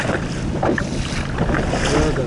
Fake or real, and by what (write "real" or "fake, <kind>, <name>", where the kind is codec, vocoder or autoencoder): real